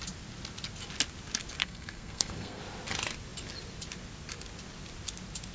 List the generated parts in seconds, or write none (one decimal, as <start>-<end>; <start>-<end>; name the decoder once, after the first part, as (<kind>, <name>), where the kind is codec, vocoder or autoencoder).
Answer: 1.6-2.6 (codec, SNAC)

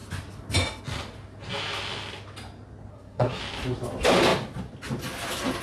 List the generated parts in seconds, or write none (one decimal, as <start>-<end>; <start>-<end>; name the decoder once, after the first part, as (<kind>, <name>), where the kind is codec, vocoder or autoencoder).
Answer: 2.9-3.4 (codec, SNAC)